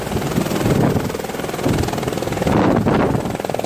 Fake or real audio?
real